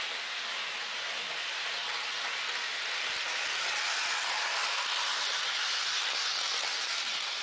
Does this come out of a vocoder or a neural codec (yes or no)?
no